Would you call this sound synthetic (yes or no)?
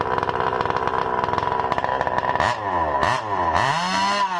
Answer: no